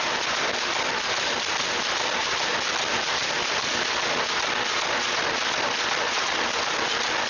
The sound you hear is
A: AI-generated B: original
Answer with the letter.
B